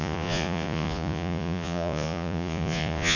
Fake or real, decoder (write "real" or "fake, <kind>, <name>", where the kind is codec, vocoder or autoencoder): fake, vocoder, Vocos